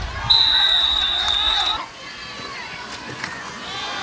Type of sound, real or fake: fake